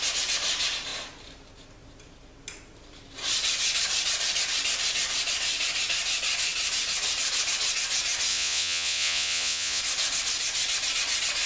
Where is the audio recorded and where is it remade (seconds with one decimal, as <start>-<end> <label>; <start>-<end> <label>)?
0.0-8.3 recorded; 8.3-9.8 remade; 9.8-11.5 recorded